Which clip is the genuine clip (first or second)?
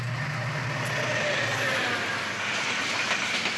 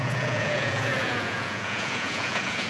first